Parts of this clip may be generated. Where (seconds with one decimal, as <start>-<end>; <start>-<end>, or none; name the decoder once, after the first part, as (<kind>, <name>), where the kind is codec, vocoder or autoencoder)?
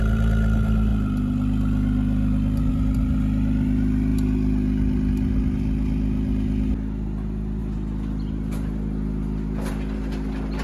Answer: none